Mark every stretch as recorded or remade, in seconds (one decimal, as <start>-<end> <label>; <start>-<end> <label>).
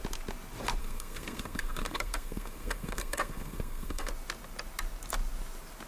0.0-0.8 recorded; 0.8-4.1 remade; 4.1-5.9 recorded